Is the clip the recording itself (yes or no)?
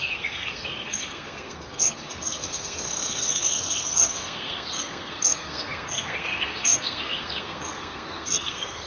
no